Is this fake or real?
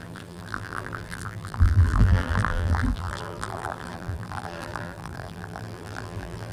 fake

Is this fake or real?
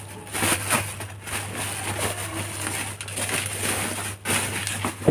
real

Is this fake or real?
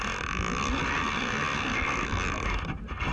real